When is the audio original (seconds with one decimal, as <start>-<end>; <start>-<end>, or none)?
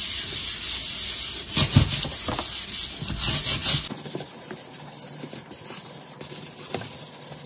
0.0-7.5